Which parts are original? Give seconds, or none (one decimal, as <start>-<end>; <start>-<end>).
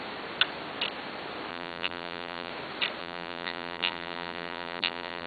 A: 0.0-1.5; 2.5-3.0